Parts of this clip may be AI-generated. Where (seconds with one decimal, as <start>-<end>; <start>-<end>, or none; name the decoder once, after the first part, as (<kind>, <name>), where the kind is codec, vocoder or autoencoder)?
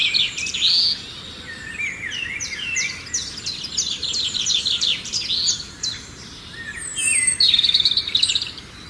4.0-5.2 (vocoder, BigVGAN v2); 6.9-8.3